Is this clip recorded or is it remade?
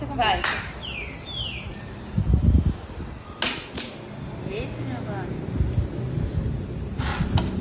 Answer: recorded